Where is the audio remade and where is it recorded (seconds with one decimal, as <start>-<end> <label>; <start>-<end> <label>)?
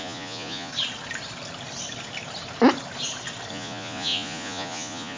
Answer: 0.0-0.7 remade; 0.7-3.5 recorded; 3.5-5.2 remade